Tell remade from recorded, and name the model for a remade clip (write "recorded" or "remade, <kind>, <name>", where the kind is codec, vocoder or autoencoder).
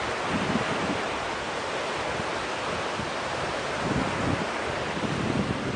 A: recorded